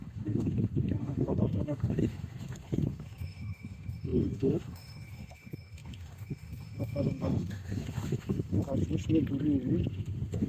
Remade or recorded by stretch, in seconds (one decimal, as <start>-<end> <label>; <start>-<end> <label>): 0.0-8.6 remade; 8.6-9.9 recorded; 9.9-10.5 remade